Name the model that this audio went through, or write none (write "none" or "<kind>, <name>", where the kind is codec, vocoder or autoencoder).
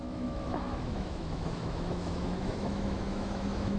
autoencoder, DAC-VAE